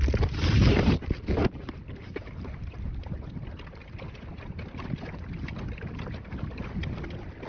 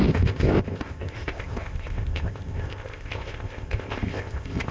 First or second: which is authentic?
first